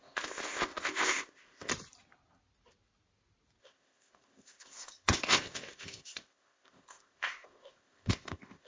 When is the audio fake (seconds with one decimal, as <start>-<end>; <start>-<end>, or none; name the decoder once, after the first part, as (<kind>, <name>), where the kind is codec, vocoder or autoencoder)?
0.0-1.7 (codec, ZipCodec); 3.6-8.7